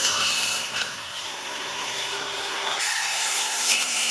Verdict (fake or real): fake